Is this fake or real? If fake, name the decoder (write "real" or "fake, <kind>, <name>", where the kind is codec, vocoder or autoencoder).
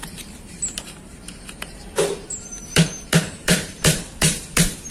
fake, vocoder, BigVGAN v2